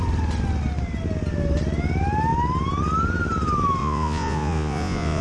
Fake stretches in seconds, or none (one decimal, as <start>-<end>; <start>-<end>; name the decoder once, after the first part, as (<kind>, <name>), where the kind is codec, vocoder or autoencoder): 3.8-5.2 (vocoder, Vocos)